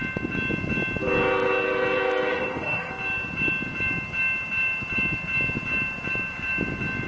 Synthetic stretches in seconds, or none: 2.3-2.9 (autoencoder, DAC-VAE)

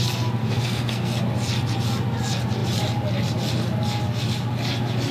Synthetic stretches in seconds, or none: 0.4-1.2 (codec, SNAC)

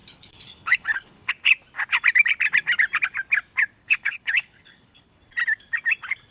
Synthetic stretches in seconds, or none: 0.0-1.3 (codec, HILCodec); 3.8-5.2

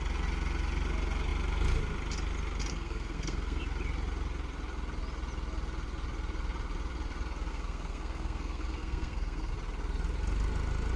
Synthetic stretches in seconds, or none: 2.7-3.6 (codec, SNAC); 7.5-9.5

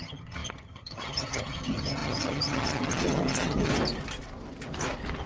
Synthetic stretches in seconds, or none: 0.0-3.7 (vocoder, HiFi-GAN)

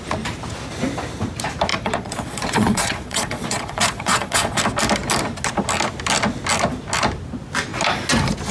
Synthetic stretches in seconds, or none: 1.7-4.6 (vocoder, Vocos)

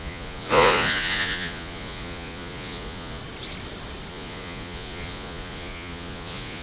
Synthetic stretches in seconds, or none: 0.0-3.2 (vocoder, Vocos); 4.1-6.6

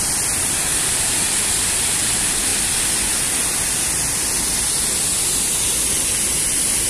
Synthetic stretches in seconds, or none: none